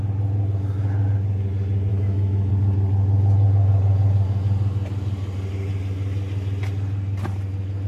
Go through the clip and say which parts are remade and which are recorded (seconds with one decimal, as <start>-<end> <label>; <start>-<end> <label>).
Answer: 0.0-1.9 recorded; 1.9-2.5 remade; 2.5-7.9 recorded